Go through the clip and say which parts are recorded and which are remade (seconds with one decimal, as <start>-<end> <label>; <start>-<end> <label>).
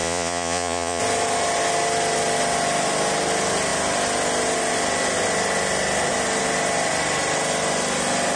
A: 0.0-1.0 remade; 1.0-8.4 recorded